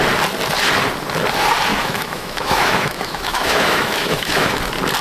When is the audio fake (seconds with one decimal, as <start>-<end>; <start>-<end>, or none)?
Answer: 1.7-4.6